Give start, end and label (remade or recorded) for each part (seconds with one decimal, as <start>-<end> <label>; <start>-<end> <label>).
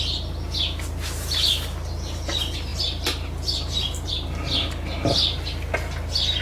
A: 0.0-2.7 recorded; 2.7-4.1 remade; 4.1-6.4 recorded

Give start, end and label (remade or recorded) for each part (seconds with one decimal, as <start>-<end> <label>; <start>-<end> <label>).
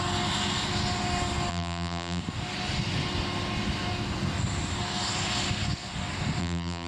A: 0.0-1.5 recorded; 1.5-2.2 remade; 2.2-6.4 recorded; 6.4-6.9 remade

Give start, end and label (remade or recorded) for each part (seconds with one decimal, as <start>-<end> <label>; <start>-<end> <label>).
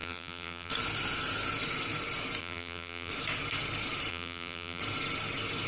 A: 0.0-0.7 remade; 0.7-2.4 recorded; 2.4-3.1 remade; 3.1-4.1 recorded; 4.1-4.8 remade; 4.8-5.7 recorded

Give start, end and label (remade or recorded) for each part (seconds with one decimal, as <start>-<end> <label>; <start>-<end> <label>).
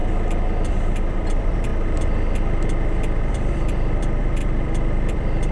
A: 0.0-0.7 recorded; 0.7-1.7 remade; 1.7-3.3 recorded; 3.3-5.5 remade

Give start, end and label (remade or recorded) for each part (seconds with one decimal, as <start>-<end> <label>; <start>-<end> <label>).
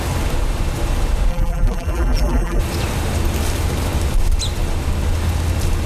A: 0.0-1.3 recorded; 1.3-2.6 remade; 2.6-5.9 recorded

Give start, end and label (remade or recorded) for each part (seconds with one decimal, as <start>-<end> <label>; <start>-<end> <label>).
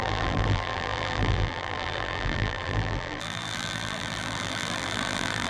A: 0.0-5.5 remade